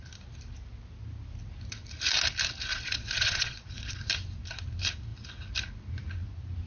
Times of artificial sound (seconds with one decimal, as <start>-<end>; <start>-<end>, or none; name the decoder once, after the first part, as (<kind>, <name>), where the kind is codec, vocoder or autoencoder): 2.7-4.1 (vocoder, Vocos)